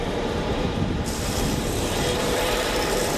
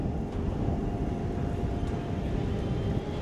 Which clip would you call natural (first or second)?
second